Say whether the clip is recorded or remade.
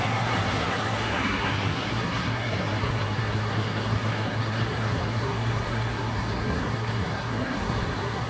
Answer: remade